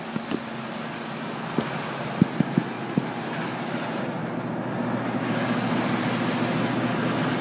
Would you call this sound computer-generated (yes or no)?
no